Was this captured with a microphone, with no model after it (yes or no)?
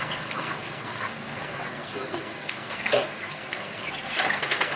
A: no